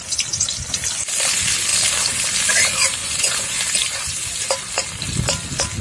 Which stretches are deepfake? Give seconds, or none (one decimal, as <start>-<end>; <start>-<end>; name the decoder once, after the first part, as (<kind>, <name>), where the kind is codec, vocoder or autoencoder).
3.0-3.6 (vocoder, Vocos)